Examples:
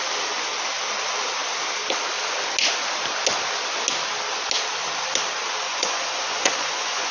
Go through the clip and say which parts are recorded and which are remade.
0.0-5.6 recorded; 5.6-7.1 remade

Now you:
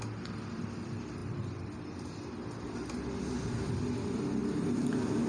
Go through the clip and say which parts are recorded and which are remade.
0.0-5.3 recorded

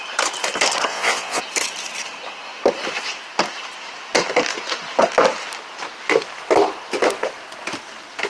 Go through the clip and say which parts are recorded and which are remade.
0.0-0.9 recorded; 0.9-1.4 remade; 1.4-8.3 recorded

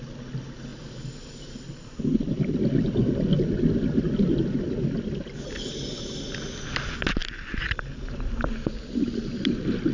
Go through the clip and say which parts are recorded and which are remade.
0.0-9.9 recorded

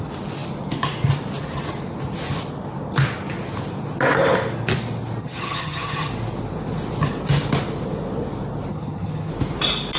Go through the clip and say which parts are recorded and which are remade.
0.0-5.2 recorded; 5.2-6.1 remade; 6.1-8.7 recorded; 8.7-9.3 remade; 9.3-10.0 recorded

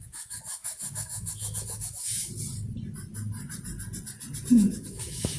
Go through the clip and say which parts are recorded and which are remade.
0.0-2.3 remade; 2.3-4.5 recorded; 4.5-5.4 remade

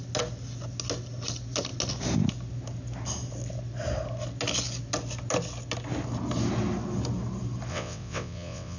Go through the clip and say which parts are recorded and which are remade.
0.0-7.7 recorded; 7.7-8.8 remade

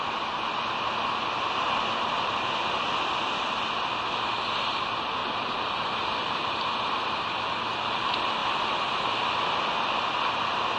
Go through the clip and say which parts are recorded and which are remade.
0.0-5.2 recorded; 5.2-6.7 remade; 6.7-8.4 recorded; 8.4-9.0 remade; 9.0-10.8 recorded